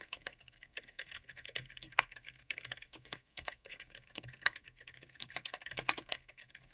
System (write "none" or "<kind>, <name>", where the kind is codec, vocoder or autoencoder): codec, SNAC